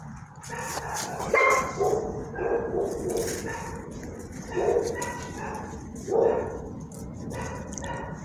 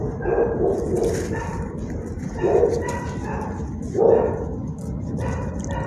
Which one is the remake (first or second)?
second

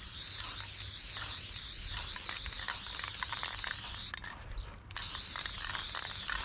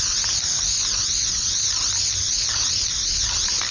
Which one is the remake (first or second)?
second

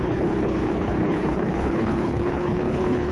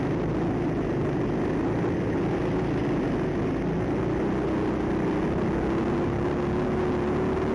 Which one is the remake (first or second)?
first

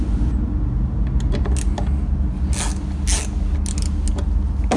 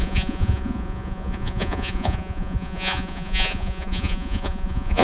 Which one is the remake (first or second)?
second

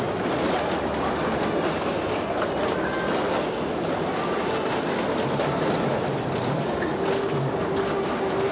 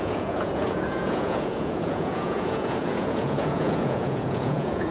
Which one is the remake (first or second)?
second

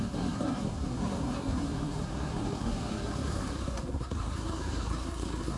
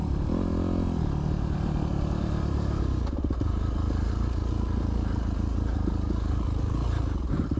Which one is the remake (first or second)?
first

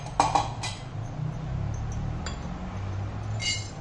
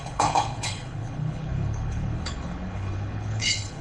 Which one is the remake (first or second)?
second